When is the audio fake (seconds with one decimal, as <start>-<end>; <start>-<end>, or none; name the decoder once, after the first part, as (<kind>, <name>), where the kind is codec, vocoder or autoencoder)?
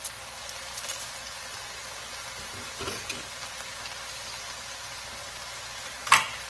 none